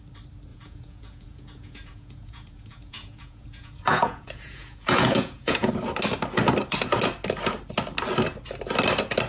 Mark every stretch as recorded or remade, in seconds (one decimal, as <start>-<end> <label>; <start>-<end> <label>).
0.0-0.5 recorded; 0.5-5.7 remade; 5.7-9.3 recorded